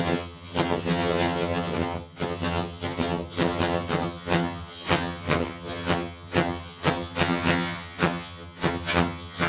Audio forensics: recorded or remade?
remade